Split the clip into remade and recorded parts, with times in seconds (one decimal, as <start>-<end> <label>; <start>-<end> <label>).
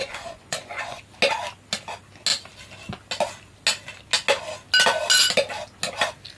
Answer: 0.0-1.0 remade; 1.0-6.4 recorded